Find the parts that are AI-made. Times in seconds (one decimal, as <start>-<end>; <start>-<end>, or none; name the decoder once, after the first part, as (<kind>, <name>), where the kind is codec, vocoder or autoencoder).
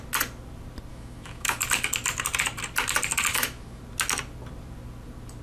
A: 0.9-1.6 (autoencoder, DAC-VAE); 3.3-3.8